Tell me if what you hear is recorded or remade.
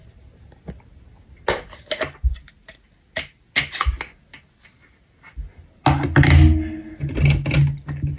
recorded